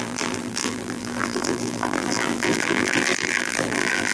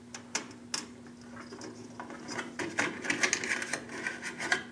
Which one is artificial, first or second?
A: first